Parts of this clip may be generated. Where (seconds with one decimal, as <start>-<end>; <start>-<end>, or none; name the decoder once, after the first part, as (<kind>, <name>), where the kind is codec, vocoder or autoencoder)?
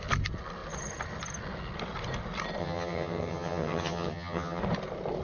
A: 2.6-4.6 (vocoder, HiFi-GAN)